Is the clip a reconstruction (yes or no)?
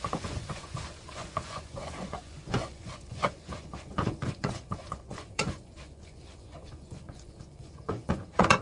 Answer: yes